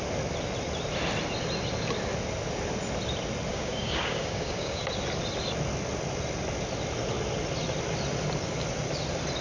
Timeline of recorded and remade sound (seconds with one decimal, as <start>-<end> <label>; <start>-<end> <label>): 0.0-3.5 recorded; 3.5-4.8 remade; 4.8-9.4 recorded